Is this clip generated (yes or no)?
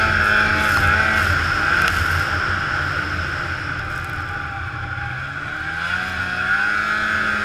no